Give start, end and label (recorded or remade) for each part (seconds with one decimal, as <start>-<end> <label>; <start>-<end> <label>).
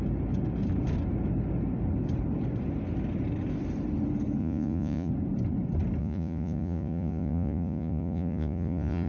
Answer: 0.0-4.4 recorded; 4.4-5.1 remade; 5.1-6.0 recorded; 6.0-9.1 remade